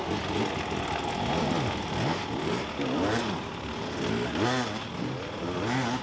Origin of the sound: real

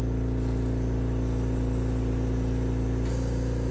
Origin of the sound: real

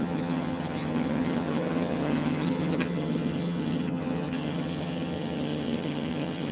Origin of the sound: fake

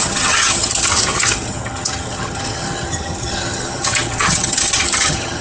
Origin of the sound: fake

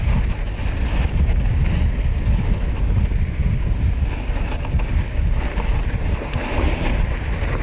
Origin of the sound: real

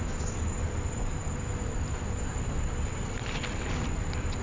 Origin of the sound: real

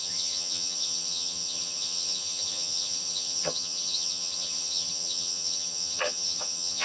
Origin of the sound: fake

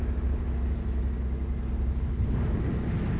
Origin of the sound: real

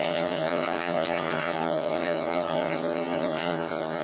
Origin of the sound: fake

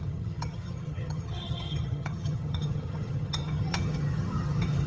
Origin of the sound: fake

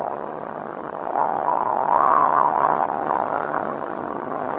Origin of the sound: fake